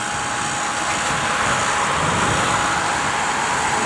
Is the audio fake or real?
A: real